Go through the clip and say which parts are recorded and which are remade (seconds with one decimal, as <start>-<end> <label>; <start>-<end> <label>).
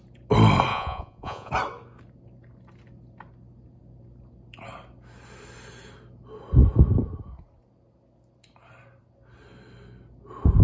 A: 0.0-0.7 recorded; 0.7-1.5 remade; 1.5-10.6 recorded